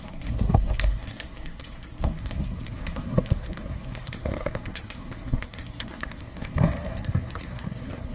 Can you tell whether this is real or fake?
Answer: fake